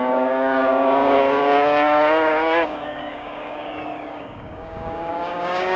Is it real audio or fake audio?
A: fake